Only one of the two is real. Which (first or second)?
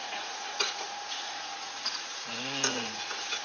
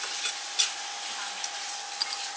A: second